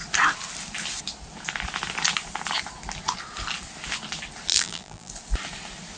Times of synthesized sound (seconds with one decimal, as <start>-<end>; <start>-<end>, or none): 4.5-5.1